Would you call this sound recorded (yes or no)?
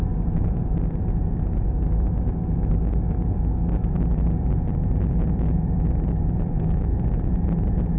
no